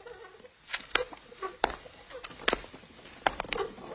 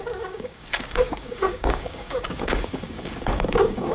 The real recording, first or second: first